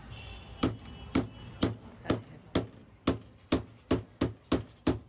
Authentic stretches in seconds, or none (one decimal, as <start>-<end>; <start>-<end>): 0.0-5.1